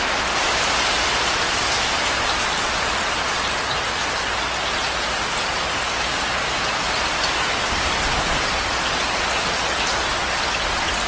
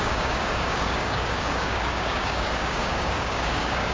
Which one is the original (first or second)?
first